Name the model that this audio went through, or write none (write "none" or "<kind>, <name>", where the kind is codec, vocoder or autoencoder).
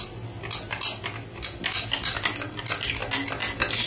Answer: none